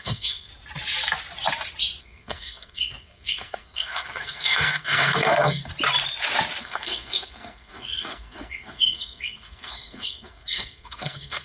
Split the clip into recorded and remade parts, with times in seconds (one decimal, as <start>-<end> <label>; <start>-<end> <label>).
0.0-0.5 remade; 0.5-2.0 recorded; 2.0-5.7 remade; 5.7-6.6 recorded; 6.6-11.4 remade